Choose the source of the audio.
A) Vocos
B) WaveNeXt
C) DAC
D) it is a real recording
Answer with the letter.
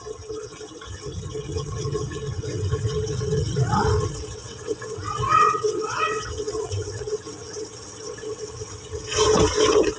B